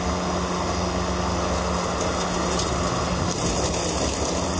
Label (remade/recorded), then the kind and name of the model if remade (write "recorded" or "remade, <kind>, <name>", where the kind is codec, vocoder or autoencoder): recorded